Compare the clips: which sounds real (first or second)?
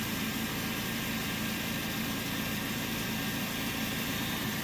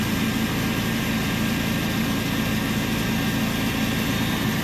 second